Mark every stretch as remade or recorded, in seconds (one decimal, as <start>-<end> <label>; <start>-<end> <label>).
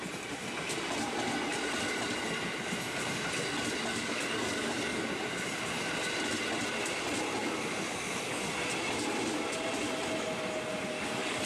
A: 0.0-3.9 recorded; 3.9-5.1 remade; 5.1-7.4 recorded; 7.4-8.5 remade; 8.5-10.9 recorded; 10.9-11.5 remade